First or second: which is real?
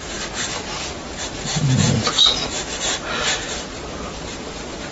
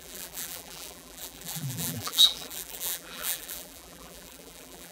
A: first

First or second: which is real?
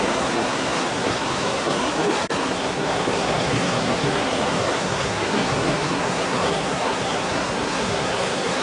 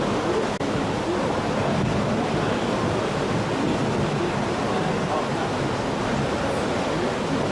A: second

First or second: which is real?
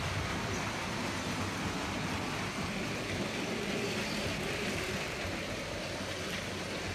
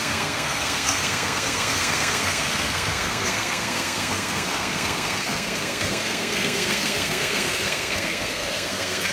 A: first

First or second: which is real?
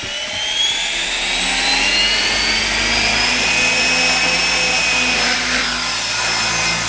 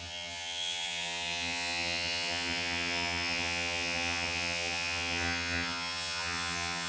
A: first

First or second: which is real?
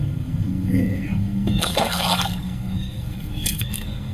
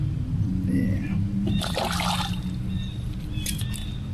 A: second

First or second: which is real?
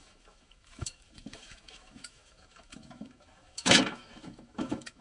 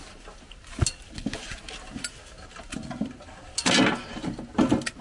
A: second